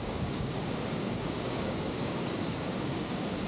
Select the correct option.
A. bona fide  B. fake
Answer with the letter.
B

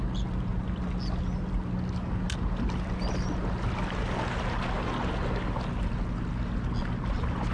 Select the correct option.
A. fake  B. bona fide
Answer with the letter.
B